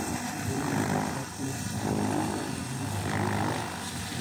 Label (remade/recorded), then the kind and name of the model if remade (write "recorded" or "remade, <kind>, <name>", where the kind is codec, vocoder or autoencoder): remade, vocoder, BigVGAN v2